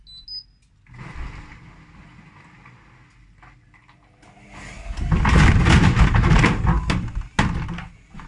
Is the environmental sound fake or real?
real